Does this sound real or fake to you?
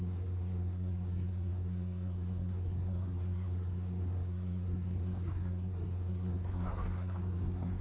fake